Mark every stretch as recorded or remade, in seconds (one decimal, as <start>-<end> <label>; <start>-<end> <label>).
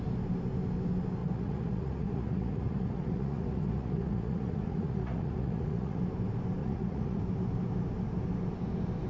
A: 0.0-1.2 recorded; 1.2-6.0 remade; 6.0-6.6 recorded; 6.6-7.2 remade; 7.2-9.1 recorded